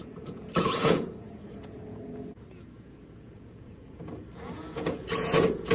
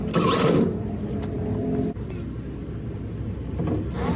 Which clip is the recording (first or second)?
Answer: second